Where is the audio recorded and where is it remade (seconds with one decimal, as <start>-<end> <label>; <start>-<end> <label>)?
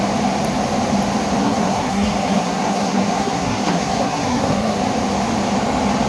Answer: 0.0-1.4 recorded; 1.4-4.8 remade; 4.8-6.1 recorded